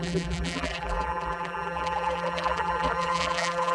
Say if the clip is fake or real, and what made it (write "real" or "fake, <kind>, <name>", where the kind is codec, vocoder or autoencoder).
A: fake, vocoder, BigVGAN v2